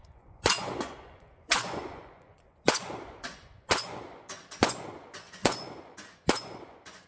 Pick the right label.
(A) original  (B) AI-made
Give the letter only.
B